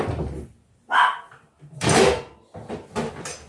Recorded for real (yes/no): yes